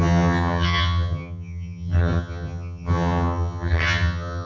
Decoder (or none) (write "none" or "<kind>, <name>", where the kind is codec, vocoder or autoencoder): vocoder, HiFi-GAN